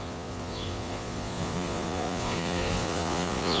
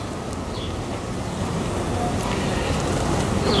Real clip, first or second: second